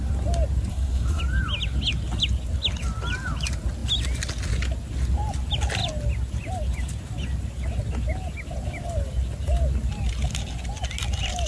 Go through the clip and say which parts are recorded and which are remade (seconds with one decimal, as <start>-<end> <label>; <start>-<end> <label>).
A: 0.0-0.7 recorded; 0.7-1.2 remade; 1.2-11.5 recorded